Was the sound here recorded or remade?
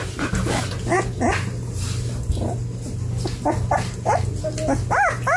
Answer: recorded